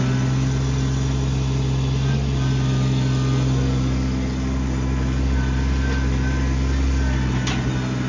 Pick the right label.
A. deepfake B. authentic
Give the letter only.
B